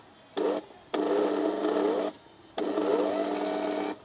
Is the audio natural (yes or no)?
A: yes